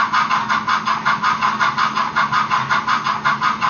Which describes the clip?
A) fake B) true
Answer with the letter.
B